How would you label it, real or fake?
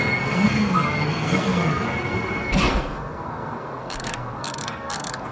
fake